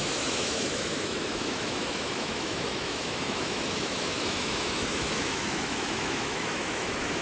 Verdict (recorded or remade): remade